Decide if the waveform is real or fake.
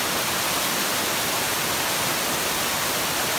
real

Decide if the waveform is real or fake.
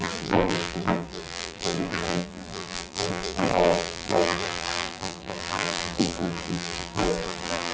fake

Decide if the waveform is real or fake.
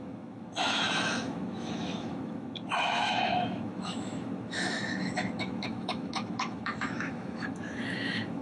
fake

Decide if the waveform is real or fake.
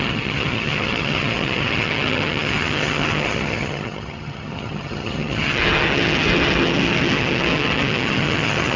fake